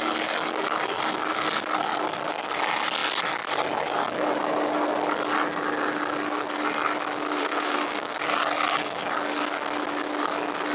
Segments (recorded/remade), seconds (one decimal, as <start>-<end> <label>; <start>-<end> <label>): 0.0-7.4 recorded; 7.4-8.2 remade; 8.2-10.7 recorded